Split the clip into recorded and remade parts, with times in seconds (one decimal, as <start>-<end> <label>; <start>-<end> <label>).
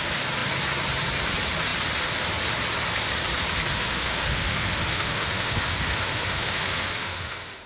0.0-3.7 recorded; 3.7-7.7 remade